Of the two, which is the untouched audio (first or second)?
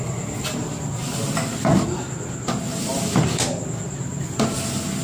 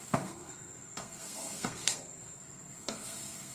first